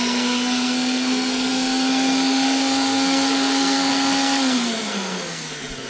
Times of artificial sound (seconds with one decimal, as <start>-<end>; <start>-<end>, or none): 0.0-5.9